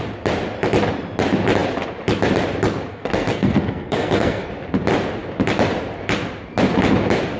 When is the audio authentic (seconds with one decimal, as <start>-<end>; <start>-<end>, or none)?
0.0-2.9; 4.5-7.4